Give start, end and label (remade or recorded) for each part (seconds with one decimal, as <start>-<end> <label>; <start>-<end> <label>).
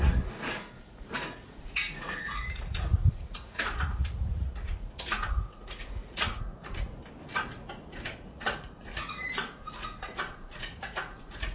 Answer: 0.0-7.0 remade; 7.0-8.2 recorded; 8.2-11.5 remade